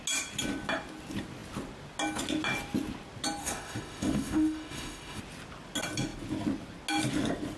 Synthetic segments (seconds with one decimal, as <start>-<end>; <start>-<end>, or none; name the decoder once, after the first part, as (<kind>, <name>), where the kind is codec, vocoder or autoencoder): 3.4-5.2 (autoencoder, DAC-VAE)